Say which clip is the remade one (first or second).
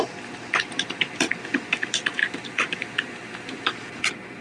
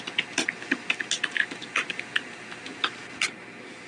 first